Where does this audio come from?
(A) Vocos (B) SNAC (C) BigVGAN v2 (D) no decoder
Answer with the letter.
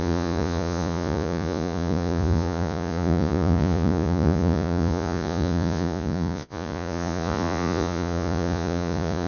A